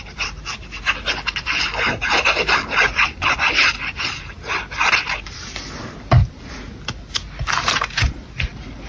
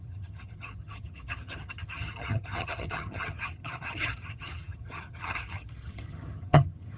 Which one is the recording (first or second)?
first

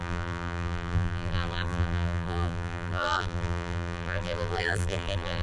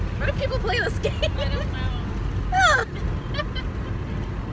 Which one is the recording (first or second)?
second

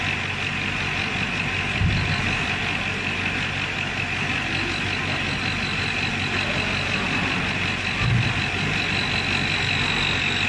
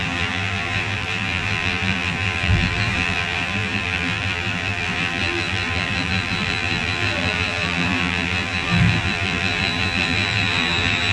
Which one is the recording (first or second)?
first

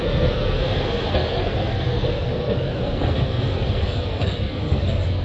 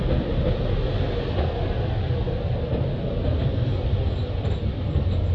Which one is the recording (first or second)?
second